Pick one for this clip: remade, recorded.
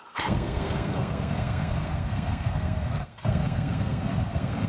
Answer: remade